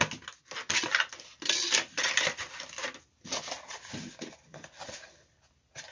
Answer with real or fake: real